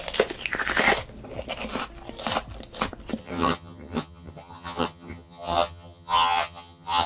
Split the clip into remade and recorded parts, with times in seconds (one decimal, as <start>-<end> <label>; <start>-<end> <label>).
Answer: 0.0-3.2 recorded; 3.2-7.1 remade